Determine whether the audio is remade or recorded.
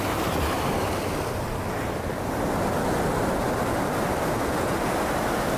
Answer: recorded